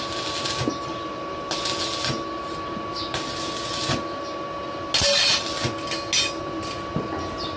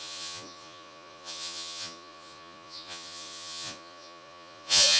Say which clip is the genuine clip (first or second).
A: first